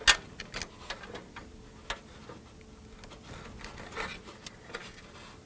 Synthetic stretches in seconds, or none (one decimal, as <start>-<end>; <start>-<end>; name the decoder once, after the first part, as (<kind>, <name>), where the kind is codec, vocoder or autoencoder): none